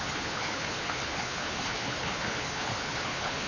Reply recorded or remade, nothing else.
remade